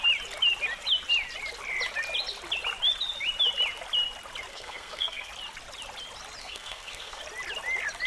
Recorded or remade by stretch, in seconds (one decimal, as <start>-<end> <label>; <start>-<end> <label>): 0.0-4.5 recorded; 4.5-5.3 remade; 5.3-6.4 recorded; 6.4-7.2 remade; 7.2-8.1 recorded